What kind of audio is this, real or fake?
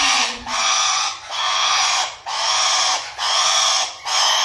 fake